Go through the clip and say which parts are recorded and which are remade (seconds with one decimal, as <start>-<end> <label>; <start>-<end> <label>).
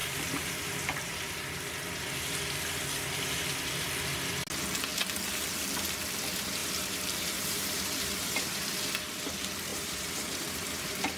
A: 0.0-1.3 remade; 1.3-6.6 recorded; 6.6-8.6 remade; 8.6-9.7 recorded; 9.7-11.2 remade